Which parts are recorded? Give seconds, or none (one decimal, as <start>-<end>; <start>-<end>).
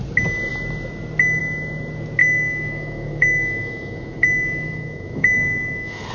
0.0-2.2